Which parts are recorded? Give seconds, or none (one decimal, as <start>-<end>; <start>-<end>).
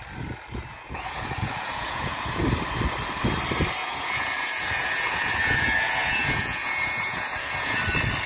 0.0-0.7; 2.4-3.8; 7.8-8.3